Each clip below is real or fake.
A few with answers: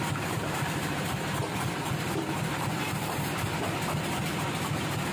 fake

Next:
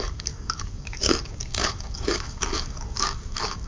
fake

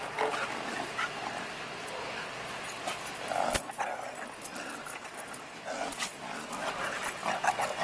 real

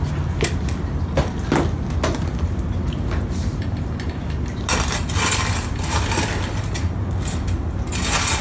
real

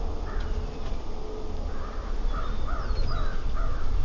real